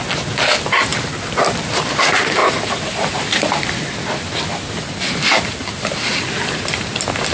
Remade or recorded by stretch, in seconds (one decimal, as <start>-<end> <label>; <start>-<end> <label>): 0.0-0.9 recorded; 0.9-1.6 remade; 1.6-2.4 recorded; 2.4-3.5 remade; 3.5-7.3 recorded